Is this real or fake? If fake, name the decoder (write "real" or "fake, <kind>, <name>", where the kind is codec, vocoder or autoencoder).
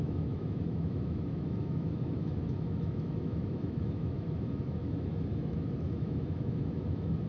fake, autoencoder, DAC-VAE